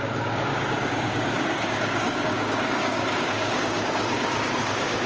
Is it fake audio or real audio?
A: fake